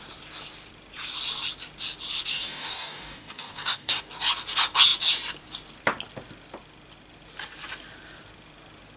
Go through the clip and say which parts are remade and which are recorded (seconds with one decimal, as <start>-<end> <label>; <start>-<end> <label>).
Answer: 0.0-2.3 recorded; 2.3-4.1 remade; 4.1-9.0 recorded